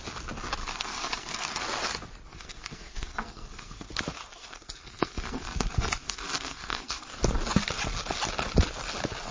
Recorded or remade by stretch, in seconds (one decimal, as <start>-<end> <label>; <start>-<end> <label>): 0.0-0.6 recorded; 0.6-1.6 remade; 1.6-2.3 recorded; 2.3-3.9 remade; 3.9-4.4 recorded; 4.4-7.1 remade; 7.1-9.3 recorded